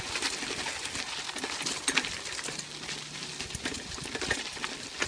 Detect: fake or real real